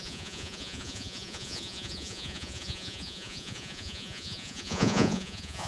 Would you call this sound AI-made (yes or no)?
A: yes